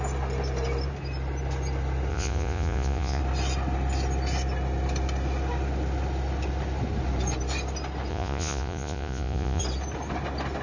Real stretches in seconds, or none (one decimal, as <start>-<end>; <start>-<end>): 0.0-2.1; 3.2-8.1; 9.6-10.6

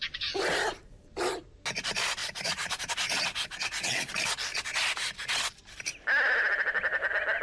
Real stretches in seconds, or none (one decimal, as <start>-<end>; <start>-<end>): 0.0-2.2; 4.1-7.4